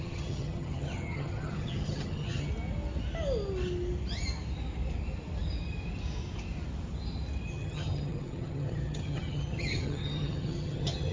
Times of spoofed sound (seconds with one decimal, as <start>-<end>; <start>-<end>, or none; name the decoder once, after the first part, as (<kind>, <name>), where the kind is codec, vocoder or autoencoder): 0.0-2.5 (vocoder, HiFi-GAN); 7.5-11.1